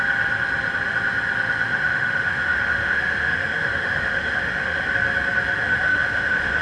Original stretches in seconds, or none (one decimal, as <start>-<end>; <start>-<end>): 0.0-1.7; 4.9-5.6